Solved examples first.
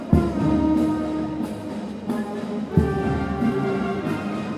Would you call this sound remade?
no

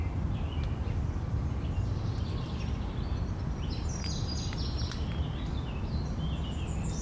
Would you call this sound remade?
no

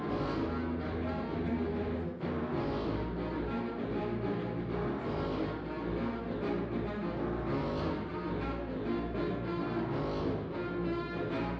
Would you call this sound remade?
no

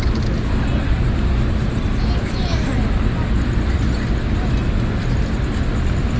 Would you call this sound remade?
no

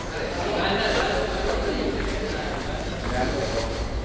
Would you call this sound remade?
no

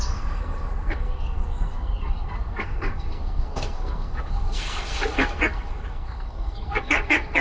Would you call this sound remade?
yes